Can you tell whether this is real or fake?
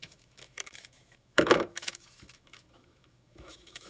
fake